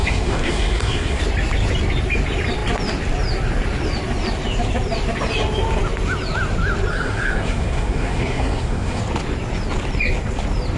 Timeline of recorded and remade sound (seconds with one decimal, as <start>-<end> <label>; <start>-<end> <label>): 0.0-1.2 remade; 1.2-6.9 recorded; 6.9-9.0 remade; 9.0-10.8 recorded